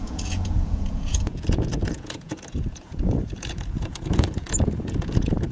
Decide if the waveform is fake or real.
fake